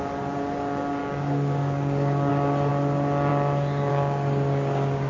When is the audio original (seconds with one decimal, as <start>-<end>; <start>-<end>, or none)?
0.0-1.0; 2.3-3.9